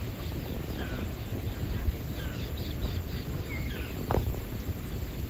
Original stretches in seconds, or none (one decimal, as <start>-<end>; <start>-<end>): 0.0-1.3; 3.8-5.3